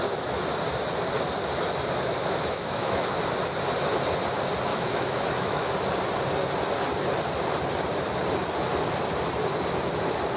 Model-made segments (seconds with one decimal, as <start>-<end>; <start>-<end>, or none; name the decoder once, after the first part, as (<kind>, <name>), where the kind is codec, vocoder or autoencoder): 2.2-3.2 (autoencoder, DAC-VAE); 4.7-5.7